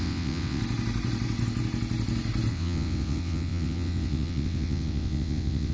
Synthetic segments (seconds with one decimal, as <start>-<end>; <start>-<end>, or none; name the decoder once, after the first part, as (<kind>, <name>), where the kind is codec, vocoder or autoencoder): 0.0-0.6 (vocoder, WaveNeXt); 2.5-5.7